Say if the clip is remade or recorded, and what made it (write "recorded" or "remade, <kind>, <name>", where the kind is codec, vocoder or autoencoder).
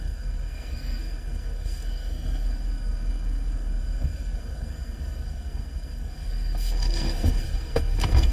remade, codec, SNAC